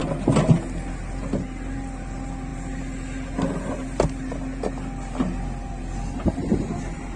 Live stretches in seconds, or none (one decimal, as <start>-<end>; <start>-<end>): 0.0-7.2